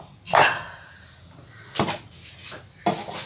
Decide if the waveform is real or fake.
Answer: real